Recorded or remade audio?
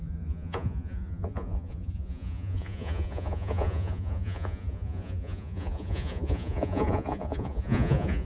remade